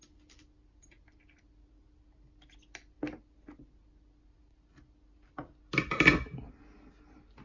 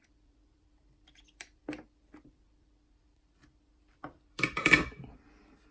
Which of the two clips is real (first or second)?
first